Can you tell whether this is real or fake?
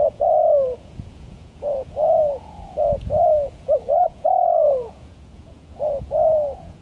fake